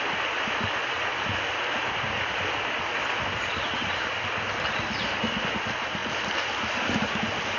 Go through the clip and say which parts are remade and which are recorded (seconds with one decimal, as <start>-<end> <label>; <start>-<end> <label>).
0.0-7.6 recorded

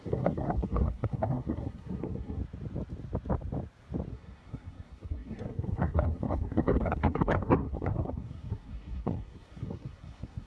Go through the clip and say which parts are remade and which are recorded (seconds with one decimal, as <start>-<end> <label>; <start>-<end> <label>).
0.0-2.4 remade; 2.4-4.1 recorded; 4.1-10.5 remade

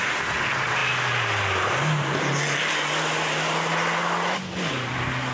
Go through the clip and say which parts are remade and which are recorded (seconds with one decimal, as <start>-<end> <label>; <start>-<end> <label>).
0.0-5.3 recorded

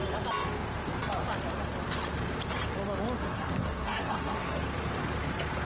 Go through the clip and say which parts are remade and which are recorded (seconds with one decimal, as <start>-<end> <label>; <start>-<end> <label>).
0.0-3.2 recorded; 3.2-4.6 remade; 4.6-5.6 recorded

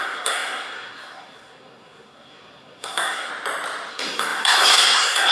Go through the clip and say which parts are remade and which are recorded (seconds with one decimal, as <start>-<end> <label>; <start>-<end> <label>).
0.0-3.3 remade; 3.3-3.9 recorded; 3.9-5.3 remade

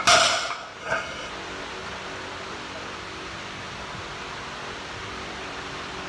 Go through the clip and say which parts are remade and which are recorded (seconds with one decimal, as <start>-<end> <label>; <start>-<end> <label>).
0.0-0.8 recorded; 0.8-1.3 remade; 1.3-6.1 recorded

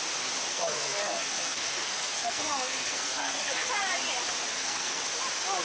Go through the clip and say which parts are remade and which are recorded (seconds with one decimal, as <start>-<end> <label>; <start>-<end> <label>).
0.0-0.5 recorded; 0.5-3.7 remade; 3.7-4.5 recorded; 4.5-5.0 remade; 5.0-5.6 recorded